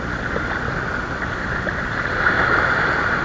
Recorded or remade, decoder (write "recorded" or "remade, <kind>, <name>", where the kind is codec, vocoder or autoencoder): remade, vocoder, BigVGAN v2